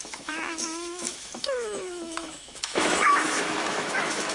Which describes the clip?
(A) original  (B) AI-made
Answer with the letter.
B